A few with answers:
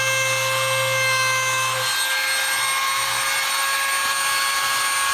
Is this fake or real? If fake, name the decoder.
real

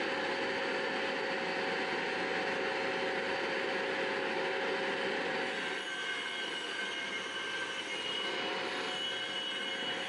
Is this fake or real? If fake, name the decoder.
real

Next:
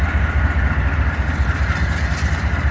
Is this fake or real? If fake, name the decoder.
real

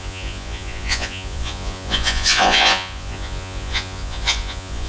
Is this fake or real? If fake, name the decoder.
fake, vocoder, Vocos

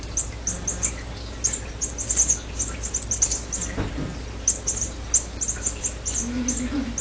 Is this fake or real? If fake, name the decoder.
real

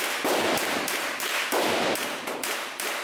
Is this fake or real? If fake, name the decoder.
real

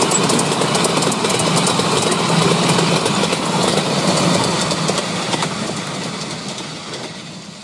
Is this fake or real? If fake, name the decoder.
real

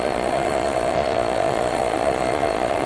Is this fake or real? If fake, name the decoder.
fake, vocoder, Vocos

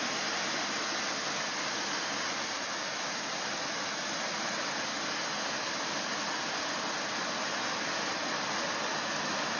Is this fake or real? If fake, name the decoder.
real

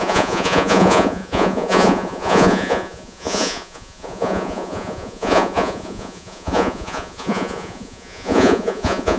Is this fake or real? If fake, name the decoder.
fake, vocoder, Vocos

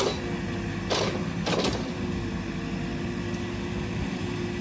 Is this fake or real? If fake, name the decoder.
real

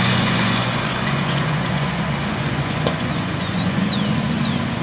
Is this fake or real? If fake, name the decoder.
fake, vocoder, Vocos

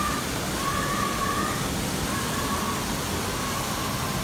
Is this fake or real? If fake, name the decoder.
real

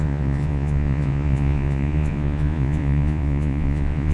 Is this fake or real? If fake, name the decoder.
fake, vocoder, Vocos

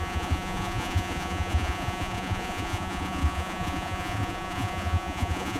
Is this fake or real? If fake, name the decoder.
fake, vocoder, Vocos